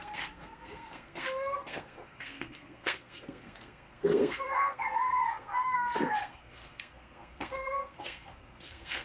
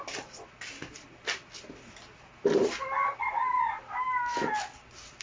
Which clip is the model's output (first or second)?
first